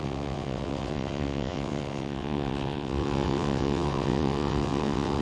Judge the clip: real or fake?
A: fake